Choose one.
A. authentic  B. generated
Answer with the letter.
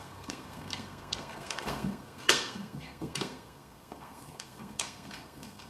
B